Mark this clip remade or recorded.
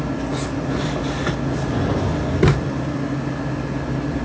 recorded